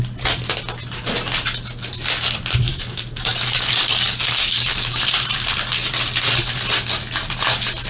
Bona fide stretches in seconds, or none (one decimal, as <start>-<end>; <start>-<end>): 0.0-2.7; 5.0-7.9